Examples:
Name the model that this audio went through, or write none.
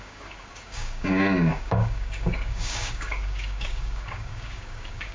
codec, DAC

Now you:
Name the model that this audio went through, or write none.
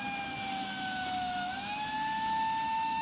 autoencoder, DAC-VAE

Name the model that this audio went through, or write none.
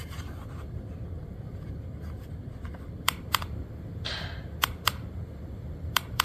vocoder, BigVGAN v2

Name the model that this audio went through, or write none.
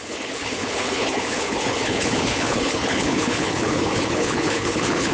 codec, HILCodec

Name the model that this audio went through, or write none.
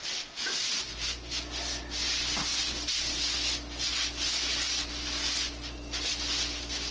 none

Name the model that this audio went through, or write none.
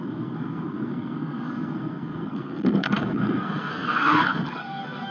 codec, SNAC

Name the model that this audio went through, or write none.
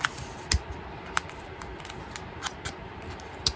none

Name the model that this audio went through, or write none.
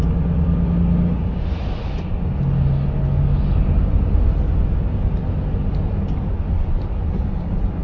none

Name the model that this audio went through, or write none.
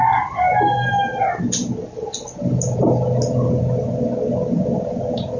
none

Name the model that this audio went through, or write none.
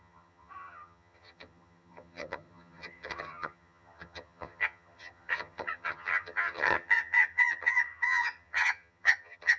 vocoder, HiFi-GAN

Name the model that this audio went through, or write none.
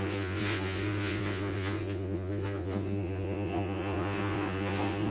vocoder, Vocos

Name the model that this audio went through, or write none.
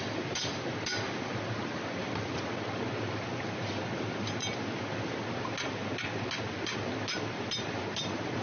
none